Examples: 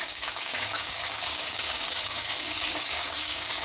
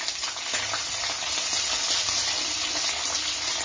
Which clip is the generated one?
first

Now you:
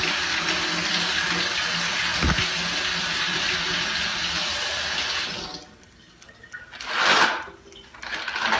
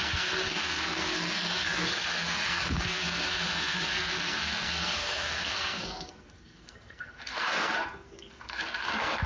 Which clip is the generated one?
second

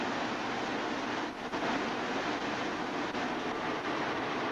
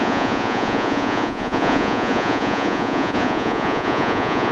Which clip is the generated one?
second